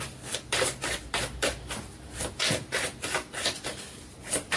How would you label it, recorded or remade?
recorded